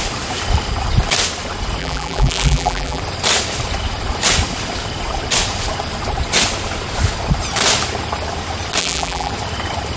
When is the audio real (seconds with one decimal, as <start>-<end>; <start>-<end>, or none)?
0.0-1.8; 3.0-8.8; 9.3-10.0